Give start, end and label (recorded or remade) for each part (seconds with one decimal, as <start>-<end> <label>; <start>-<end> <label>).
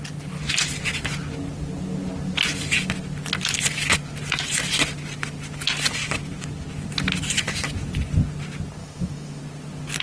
0.0-8.8 recorded; 8.8-9.4 remade; 9.4-10.0 recorded